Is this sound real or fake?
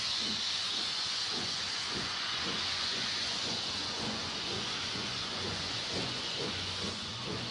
fake